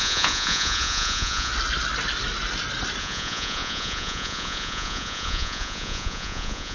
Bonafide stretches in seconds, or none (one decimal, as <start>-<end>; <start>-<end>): 1.5-3.0